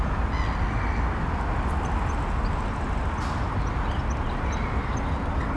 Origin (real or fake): real